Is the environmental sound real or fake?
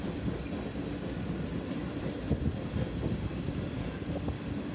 real